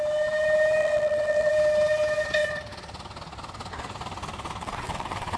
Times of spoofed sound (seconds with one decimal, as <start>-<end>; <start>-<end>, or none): 0.8-1.5; 4.6-5.4

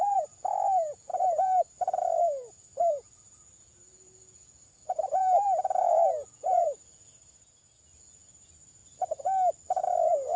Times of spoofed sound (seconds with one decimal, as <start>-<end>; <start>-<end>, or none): 0.0-8.8; 9.8-10.4